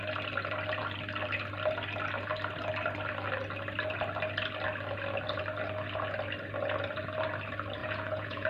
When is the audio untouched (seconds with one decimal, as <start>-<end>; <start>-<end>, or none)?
0.0-7.8